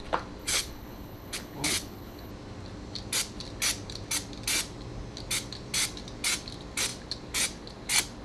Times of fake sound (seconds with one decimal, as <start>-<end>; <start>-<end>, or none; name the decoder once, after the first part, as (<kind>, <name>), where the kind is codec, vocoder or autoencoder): 0.4-2.3 (codec, HILCodec)